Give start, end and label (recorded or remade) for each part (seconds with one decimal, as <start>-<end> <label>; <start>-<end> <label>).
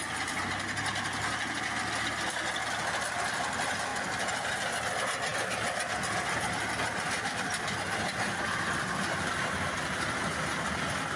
0.0-11.2 recorded